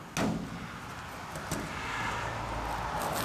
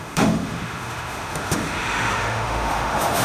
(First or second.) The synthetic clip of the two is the second